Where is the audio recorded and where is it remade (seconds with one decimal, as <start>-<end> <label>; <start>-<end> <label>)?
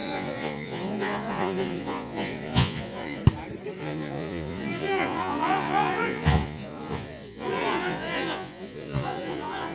0.0-3.2 remade; 3.2-3.8 recorded; 3.8-9.7 remade